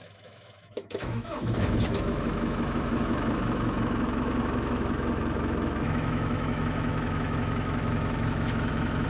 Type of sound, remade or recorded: remade